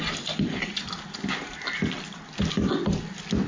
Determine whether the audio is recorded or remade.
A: recorded